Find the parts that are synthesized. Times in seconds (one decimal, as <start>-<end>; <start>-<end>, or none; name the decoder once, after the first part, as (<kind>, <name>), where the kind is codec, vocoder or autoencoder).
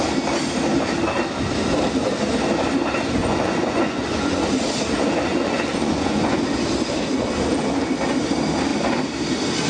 3.2-4.5 (vocoder, Vocos); 5.3-6.4